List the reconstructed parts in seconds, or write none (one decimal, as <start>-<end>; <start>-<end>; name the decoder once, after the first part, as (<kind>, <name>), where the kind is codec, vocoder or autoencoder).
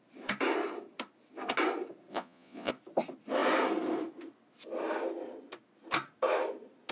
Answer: 2.1-2.7 (vocoder, Vocos)